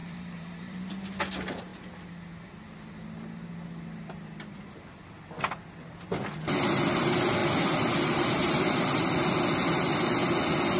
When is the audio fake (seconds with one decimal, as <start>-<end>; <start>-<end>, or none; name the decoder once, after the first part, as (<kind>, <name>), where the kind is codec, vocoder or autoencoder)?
0.0-0.9 (vocoder, BigVGAN v2); 7.4-9.1

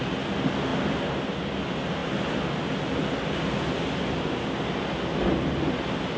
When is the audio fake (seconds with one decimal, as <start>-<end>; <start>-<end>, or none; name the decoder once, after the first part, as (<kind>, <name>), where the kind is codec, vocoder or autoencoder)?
none

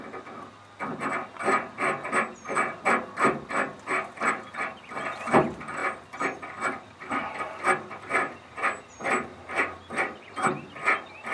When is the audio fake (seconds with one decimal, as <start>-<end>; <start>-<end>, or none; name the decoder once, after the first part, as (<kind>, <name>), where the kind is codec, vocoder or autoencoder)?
5.8-10.3 (vocoder, BigVGAN v2)

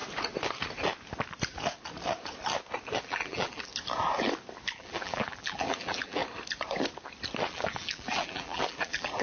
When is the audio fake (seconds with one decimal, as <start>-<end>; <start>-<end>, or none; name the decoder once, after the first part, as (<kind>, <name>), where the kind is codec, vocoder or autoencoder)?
3.0-3.7 (vocoder, BigVGAN v2); 4.8-6.2; 7.5-9.2

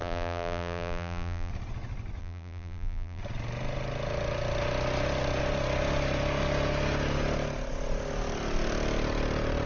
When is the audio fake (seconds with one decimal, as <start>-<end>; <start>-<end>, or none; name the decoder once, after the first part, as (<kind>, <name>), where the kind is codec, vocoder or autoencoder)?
0.0-1.5 (vocoder, BigVGAN v2); 2.2-3.2

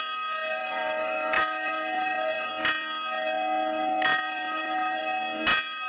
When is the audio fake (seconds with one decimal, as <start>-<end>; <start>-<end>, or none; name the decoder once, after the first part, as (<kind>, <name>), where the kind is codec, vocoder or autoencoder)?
0.6-2.5 (vocoder, BigVGAN v2); 4.1-5.0

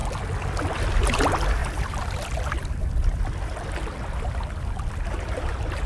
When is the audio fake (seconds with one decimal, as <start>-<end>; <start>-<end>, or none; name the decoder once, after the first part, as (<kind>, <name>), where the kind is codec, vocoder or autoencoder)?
1.0-1.6 (vocoder, BigVGAN v2); 5.1-5.9